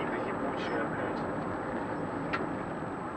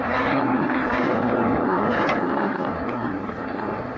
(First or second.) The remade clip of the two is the second